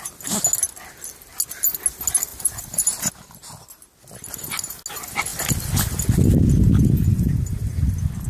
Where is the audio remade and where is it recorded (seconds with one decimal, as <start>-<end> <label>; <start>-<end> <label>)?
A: 0.0-2.3 recorded; 2.3-3.1 remade; 3.1-8.3 recorded